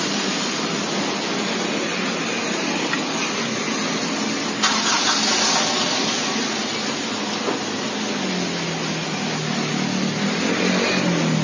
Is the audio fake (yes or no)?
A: no